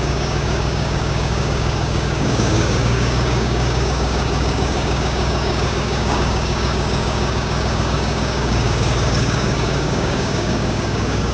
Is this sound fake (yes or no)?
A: yes